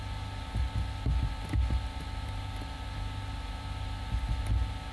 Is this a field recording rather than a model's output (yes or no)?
yes